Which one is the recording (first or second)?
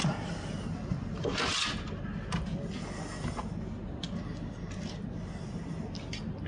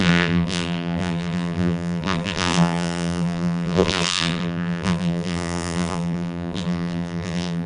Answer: first